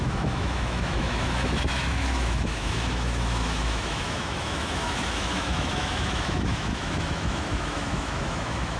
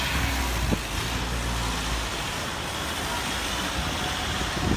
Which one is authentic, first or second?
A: second